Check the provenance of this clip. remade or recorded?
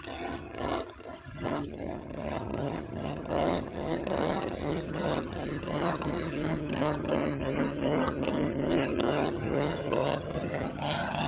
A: remade